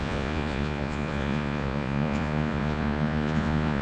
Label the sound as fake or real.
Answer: fake